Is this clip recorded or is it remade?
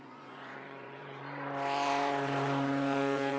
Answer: remade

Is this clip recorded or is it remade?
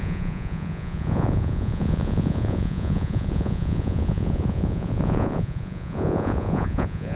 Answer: remade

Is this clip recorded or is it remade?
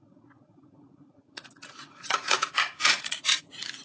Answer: remade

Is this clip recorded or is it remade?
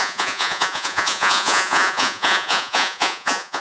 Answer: remade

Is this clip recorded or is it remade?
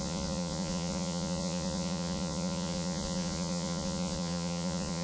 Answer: remade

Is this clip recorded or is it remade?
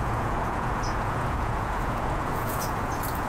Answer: remade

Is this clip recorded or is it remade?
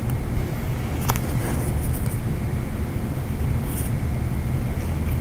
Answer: recorded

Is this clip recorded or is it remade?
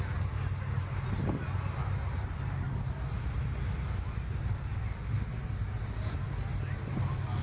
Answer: recorded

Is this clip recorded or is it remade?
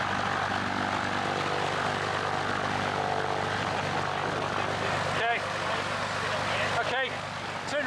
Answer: recorded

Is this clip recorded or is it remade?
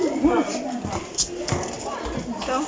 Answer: recorded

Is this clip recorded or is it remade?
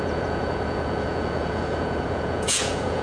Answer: remade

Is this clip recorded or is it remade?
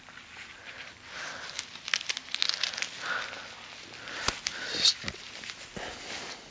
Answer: recorded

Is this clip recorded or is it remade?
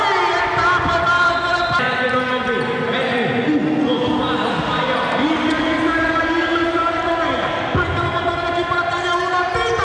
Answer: recorded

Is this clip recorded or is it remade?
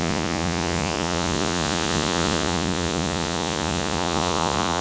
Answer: remade